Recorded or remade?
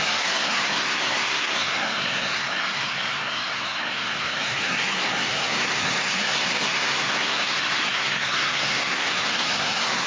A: remade